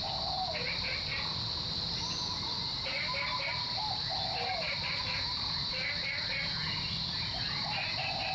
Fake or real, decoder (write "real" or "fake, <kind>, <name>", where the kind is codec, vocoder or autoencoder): real